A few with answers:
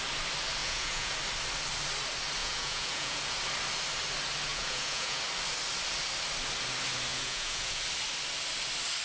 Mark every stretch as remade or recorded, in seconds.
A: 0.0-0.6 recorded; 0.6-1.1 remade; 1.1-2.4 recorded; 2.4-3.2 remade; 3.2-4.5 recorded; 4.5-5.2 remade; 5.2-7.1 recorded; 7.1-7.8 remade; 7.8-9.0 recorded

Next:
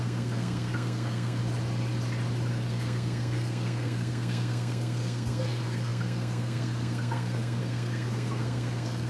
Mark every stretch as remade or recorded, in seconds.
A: 0.0-1.4 remade; 1.4-2.5 recorded; 2.5-9.1 remade